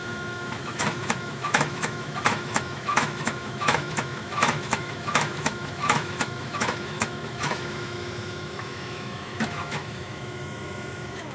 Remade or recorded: remade